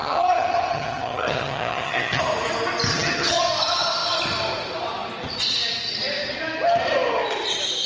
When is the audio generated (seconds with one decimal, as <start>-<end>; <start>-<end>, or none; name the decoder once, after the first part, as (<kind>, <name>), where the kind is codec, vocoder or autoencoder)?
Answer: 0.0-2.2 (vocoder, HiFi-GAN); 2.9-3.4